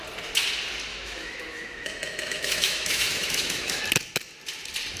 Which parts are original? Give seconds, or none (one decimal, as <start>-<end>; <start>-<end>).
0.0-0.9; 3.8-5.0